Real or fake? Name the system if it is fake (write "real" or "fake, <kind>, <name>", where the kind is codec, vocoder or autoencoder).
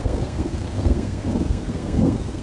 fake, codec, SNAC